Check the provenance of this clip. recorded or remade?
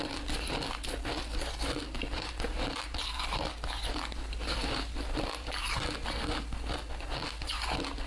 recorded